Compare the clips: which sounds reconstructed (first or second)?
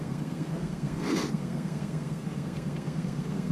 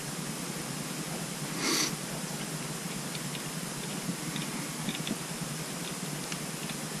first